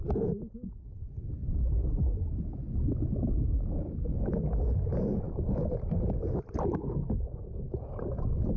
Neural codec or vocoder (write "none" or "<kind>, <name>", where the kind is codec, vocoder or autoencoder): none